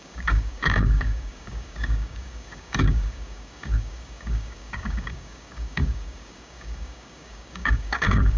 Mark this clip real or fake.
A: fake